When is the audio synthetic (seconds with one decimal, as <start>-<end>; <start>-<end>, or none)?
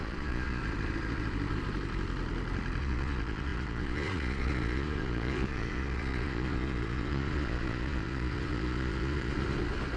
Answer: 0.0-0.6; 2.8-9.3